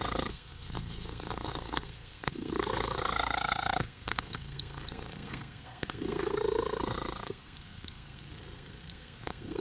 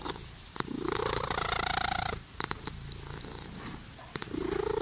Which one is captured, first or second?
second